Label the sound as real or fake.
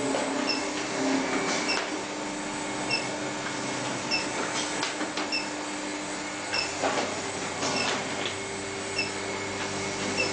real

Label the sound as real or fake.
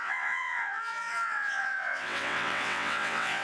fake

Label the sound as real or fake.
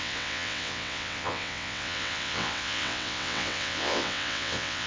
fake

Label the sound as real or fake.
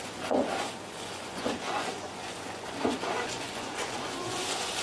fake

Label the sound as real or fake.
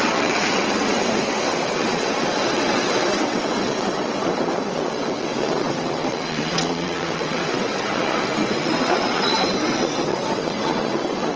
fake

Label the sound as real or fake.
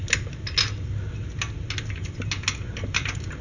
real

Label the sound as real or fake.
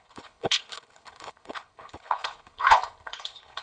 fake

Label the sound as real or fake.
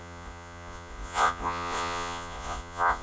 fake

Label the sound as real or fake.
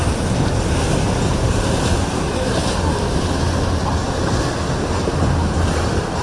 real